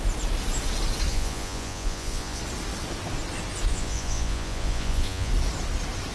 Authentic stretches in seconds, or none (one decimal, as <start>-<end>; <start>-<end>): 0.0-1.1; 2.4-3.7; 5.3-6.1